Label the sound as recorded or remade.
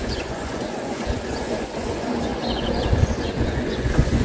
remade